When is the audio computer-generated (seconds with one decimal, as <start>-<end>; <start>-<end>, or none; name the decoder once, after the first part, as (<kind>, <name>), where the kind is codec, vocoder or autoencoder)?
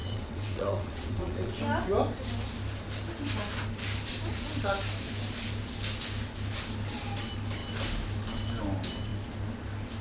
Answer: 0.0-1.6 (vocoder, WaveNeXt)